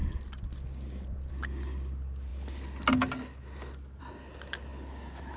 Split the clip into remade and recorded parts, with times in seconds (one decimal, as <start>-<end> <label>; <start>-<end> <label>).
0.0-5.4 recorded